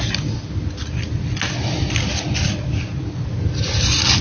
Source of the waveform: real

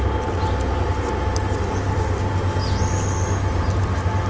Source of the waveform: real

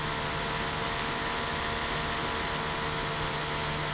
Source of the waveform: real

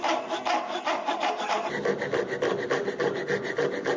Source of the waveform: real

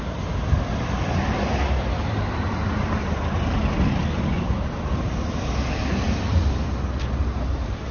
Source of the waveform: real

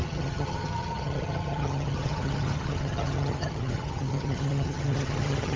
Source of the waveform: fake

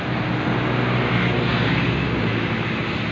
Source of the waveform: real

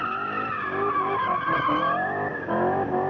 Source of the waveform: real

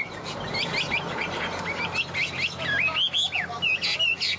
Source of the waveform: real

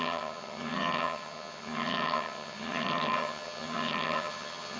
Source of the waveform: fake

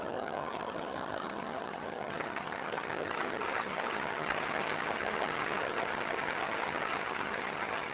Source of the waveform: fake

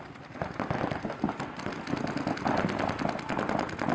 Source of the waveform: real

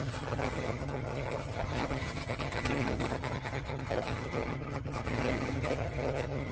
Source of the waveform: fake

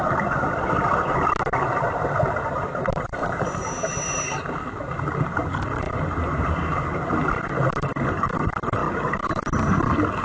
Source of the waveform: real